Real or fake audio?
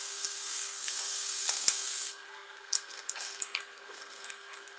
fake